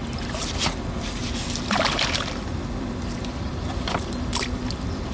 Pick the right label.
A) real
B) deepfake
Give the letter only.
A